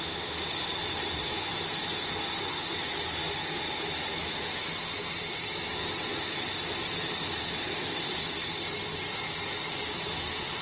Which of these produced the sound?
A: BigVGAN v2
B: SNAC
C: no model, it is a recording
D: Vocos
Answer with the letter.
C